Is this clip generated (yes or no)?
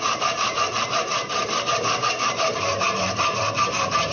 yes